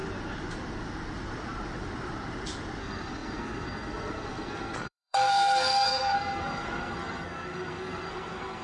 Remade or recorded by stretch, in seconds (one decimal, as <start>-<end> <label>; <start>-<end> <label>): 0.0-2.8 recorded; 2.8-8.6 remade